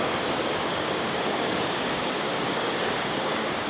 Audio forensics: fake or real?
fake